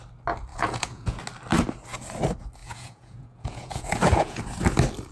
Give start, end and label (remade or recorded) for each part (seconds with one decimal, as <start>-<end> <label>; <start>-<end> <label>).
0.0-0.5 recorded; 0.5-1.2 remade; 1.2-2.6 recorded; 2.6-4.4 remade; 4.4-5.1 recorded